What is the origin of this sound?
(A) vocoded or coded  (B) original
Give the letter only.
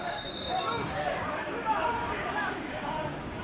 A